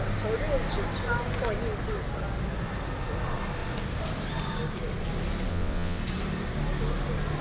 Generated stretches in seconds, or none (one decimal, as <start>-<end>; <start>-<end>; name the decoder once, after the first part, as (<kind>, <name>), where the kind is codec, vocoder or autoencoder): 5.5-6.0 (vocoder, WaveNeXt)